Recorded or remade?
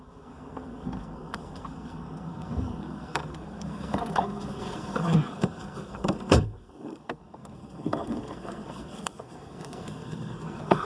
remade